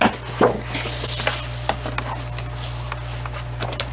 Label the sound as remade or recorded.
recorded